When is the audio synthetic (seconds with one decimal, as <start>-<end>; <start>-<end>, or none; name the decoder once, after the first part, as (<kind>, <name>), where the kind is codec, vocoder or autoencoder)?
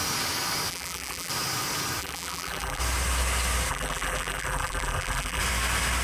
0.7-1.3 (vocoder, BigVGAN v2); 2.0-2.8; 3.7-5.4